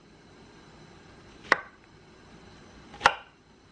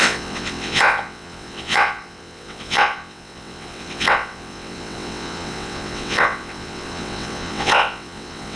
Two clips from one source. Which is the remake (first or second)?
second